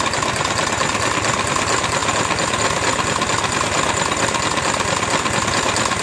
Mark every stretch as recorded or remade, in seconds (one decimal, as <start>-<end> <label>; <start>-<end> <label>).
0.0-6.0 recorded